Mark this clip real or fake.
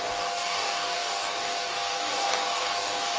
fake